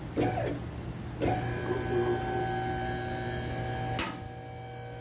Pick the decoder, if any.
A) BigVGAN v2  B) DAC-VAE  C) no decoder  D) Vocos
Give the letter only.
C